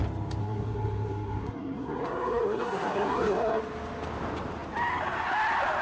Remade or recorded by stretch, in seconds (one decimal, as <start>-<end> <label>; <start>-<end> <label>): 0.0-0.4 recorded; 0.4-3.6 remade; 3.6-5.8 recorded